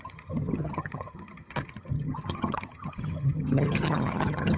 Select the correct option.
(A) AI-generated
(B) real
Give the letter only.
A